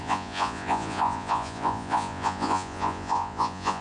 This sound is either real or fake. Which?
fake